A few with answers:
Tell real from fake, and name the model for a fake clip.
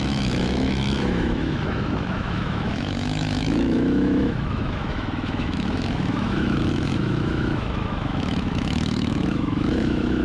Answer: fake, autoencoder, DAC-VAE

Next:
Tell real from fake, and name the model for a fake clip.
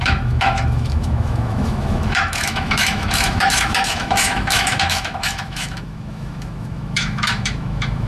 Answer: fake, autoencoder, DAC-VAE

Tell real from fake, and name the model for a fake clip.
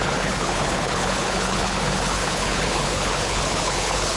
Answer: fake, codec, HILCodec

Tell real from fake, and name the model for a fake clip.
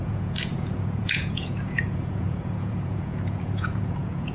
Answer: fake, vocoder, Vocos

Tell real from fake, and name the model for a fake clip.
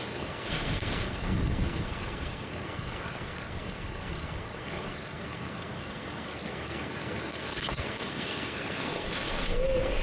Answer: fake, codec, SNAC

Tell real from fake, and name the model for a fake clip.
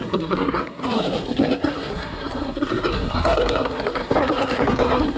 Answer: fake, codec, SNAC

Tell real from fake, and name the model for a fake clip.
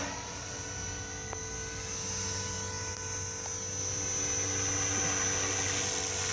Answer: real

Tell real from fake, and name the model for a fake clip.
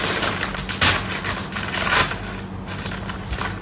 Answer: real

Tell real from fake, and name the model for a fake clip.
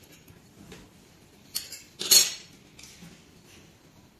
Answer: real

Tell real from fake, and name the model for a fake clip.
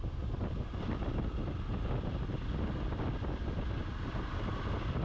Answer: real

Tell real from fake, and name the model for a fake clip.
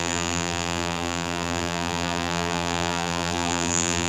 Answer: fake, vocoder, BigVGAN v2